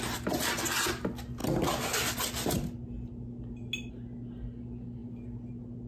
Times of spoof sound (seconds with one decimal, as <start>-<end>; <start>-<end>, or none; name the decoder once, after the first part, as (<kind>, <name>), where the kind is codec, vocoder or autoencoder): none